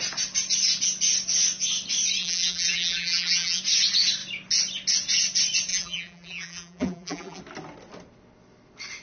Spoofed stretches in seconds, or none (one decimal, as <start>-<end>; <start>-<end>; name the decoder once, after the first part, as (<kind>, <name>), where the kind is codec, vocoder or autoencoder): 2.2-3.6 (vocoder, BigVGAN v2); 5.7-7.4